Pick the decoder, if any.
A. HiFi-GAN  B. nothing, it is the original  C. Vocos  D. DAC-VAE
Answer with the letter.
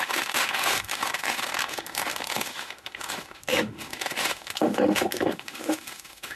D